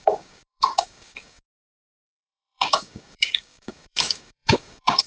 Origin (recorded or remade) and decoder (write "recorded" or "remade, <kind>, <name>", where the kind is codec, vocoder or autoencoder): remade, codec, DAC